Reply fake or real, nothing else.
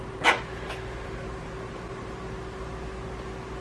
real